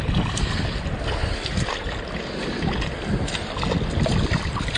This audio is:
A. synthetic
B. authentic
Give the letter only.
B